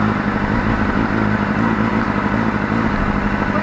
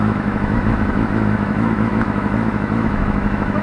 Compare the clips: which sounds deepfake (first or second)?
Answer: second